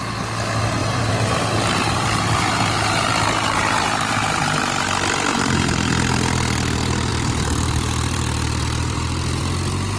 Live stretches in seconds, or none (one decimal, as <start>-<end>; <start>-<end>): 0.0-0.8; 4.6-5.3; 5.9-7.1; 9.4-10.0